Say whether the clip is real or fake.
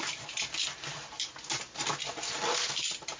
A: real